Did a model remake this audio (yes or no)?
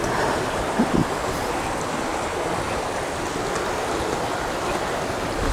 no